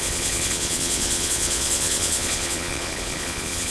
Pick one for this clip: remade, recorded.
remade